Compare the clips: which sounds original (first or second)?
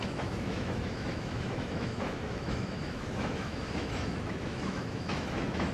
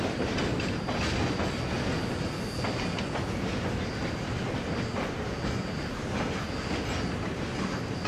second